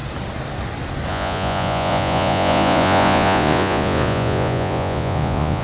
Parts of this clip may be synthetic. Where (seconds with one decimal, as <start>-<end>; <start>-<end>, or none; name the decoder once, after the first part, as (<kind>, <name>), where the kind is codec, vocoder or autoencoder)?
1.1-5.6 (vocoder, Vocos)